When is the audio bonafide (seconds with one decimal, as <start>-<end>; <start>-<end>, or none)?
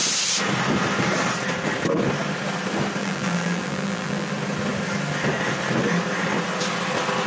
0.0-3.0; 4.3-7.3